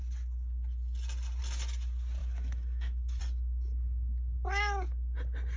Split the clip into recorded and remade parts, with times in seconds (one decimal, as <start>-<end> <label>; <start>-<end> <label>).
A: 0.0-2.2 recorded; 2.2-3.2 remade; 3.2-5.6 recorded